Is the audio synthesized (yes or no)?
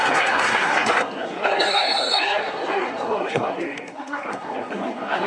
yes